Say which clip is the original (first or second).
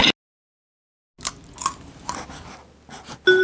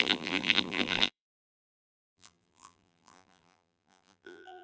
first